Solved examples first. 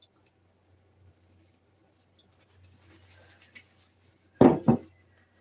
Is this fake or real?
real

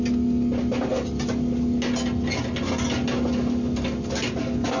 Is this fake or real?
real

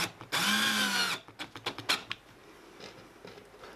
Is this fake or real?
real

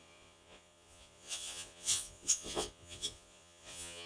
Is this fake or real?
fake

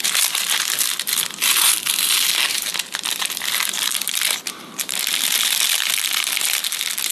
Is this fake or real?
fake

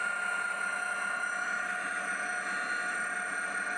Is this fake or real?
real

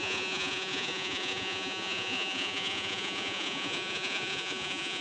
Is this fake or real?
fake